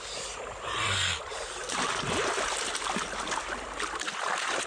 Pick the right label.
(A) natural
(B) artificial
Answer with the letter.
A